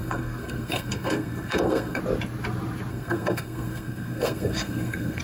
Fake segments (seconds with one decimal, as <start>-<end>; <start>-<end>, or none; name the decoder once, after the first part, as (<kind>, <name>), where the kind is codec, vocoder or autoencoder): 0.0-2.0 (codec, SNAC); 2.9-5.2